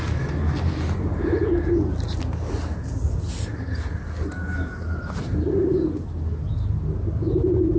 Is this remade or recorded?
recorded